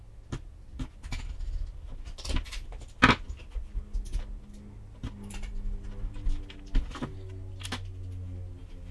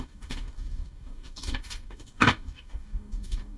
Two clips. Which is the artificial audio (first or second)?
second